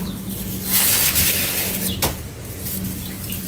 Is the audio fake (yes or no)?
no